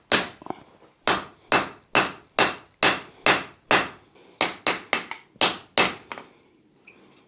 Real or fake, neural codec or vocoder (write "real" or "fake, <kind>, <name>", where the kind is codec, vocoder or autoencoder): real